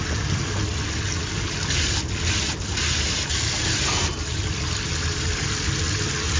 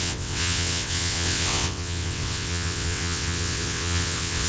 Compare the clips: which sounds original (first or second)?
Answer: first